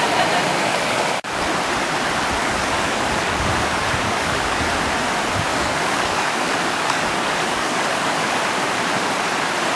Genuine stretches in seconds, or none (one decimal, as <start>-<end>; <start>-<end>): 0.0-0.5; 1.4-2.4; 4.7-5.5; 8.4-9.8